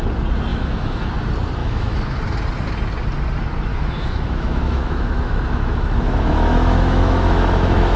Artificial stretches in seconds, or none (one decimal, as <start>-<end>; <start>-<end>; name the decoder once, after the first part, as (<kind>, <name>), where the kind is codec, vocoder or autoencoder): 0.5-1.1 (autoencoder, DAC-VAE); 1.6-2.2; 3.7-8.0